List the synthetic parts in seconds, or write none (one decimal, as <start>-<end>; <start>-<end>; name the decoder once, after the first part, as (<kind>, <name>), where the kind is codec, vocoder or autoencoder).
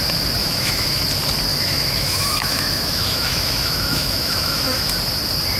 0.4-1.0 (autoencoder, DAC-VAE); 1.5-4.9